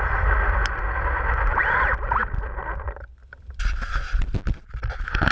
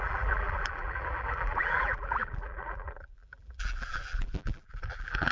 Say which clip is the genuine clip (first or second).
first